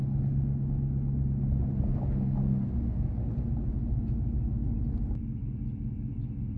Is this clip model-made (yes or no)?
no